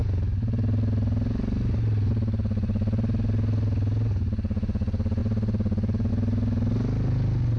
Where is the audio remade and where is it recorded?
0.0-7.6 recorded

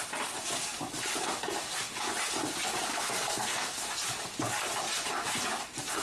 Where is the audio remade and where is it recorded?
0.0-2.9 recorded; 2.9-3.8 remade; 3.8-6.0 recorded

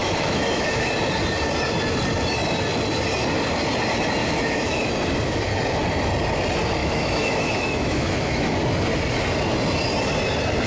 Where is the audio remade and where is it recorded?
0.0-0.9 remade; 0.9-4.2 recorded; 4.2-4.9 remade; 4.9-6.8 recorded; 6.8-8.6 remade; 8.6-10.7 recorded